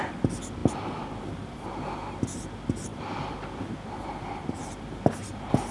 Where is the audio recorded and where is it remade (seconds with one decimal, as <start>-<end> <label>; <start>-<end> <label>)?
0.0-0.6 recorded; 0.6-1.2 remade; 1.2-5.7 recorded